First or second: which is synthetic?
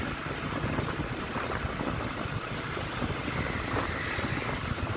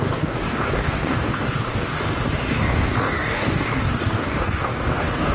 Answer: second